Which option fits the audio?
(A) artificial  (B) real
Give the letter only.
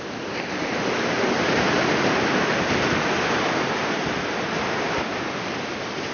B